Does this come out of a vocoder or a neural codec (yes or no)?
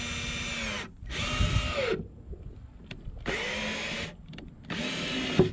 no